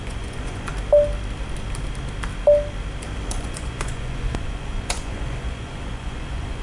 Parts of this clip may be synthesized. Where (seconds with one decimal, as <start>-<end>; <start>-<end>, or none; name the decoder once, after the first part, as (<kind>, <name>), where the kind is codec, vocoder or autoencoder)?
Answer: 0.0-0.7 (vocoder, Vocos); 3.3-6.6